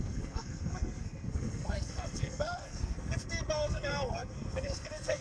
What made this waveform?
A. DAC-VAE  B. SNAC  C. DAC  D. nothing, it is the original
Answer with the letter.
B